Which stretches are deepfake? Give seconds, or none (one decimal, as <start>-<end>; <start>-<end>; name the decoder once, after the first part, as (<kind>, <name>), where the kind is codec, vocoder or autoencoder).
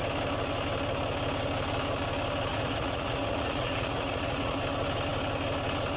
2.5-4.6 (vocoder, Vocos)